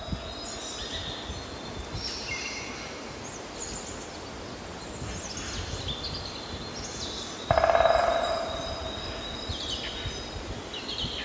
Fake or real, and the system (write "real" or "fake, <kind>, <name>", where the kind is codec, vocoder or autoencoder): real